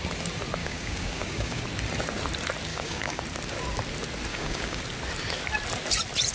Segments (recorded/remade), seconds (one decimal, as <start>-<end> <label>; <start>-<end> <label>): 0.0-0.6 recorded; 0.6-1.6 remade; 1.6-2.7 recorded; 2.7-3.2 remade; 3.2-4.3 recorded; 4.3-4.8 remade; 4.8-6.3 recorded